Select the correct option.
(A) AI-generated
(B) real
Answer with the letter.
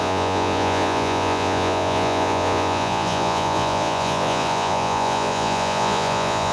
A